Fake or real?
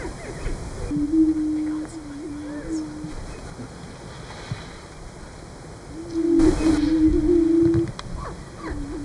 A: real